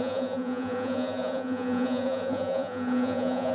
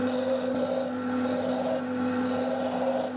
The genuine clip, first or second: second